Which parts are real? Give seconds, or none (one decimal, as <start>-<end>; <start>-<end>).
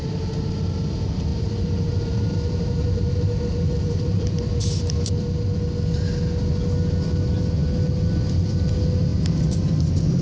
0.0-1.3; 4.6-10.2